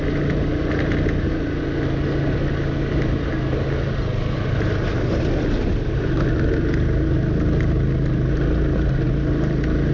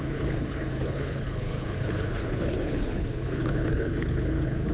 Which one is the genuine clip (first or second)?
first